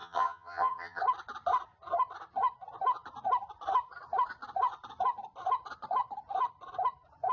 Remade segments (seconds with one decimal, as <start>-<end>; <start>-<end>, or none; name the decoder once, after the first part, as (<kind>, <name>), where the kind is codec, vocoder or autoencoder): 0.0-1.0 (vocoder, HiFi-GAN)